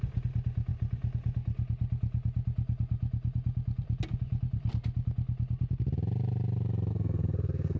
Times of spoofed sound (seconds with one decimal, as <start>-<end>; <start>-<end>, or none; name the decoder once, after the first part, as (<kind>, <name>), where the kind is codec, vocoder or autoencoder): 6.9-7.8 (codec, SNAC)